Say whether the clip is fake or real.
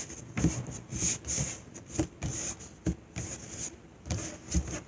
real